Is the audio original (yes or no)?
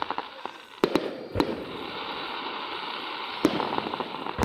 no